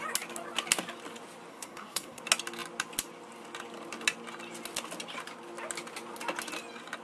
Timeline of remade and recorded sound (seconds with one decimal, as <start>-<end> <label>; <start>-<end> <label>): 0.0-1.5 recorded; 1.5-2.2 remade; 2.2-7.0 recorded

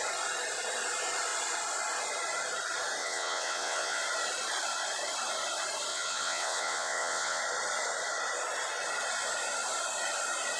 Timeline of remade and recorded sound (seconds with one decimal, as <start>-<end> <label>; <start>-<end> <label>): 0.0-3.0 recorded; 3.0-4.0 remade; 4.0-5.9 recorded; 5.9-7.4 remade; 7.4-10.6 recorded